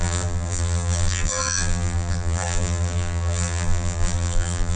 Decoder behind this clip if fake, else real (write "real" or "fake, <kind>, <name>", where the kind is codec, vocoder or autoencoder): fake, vocoder, BigVGAN v2